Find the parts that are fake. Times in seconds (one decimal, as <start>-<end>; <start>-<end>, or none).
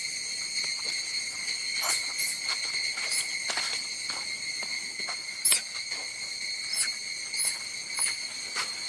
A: none